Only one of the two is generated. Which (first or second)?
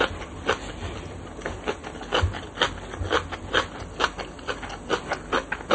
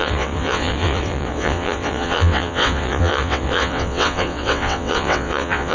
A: second